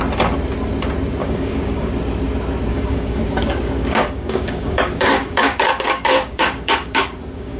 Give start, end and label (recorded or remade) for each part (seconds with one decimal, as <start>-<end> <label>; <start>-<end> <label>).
0.0-1.2 recorded; 1.2-1.9 remade; 1.9-2.7 recorded; 2.7-7.6 remade